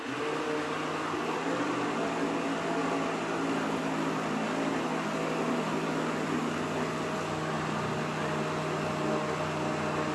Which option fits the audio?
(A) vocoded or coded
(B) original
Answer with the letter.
B